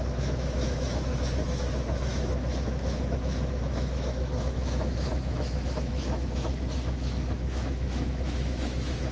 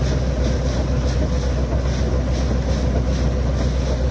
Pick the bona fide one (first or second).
second